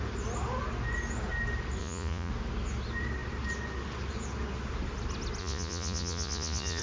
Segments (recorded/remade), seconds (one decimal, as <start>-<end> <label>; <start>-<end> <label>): 0.0-1.8 recorded; 1.8-2.3 remade; 2.3-5.4 recorded; 5.4-6.8 remade